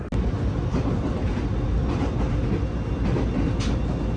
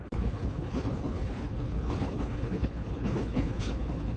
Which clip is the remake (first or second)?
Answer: second